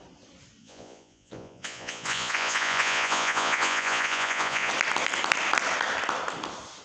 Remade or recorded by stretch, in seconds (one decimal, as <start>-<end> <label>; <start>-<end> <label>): 0.0-0.6 recorded; 0.6-4.7 remade; 4.7-6.8 recorded